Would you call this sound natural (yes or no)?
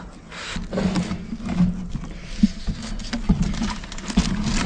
yes